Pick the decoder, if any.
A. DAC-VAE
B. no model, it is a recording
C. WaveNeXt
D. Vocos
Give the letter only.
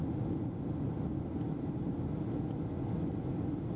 B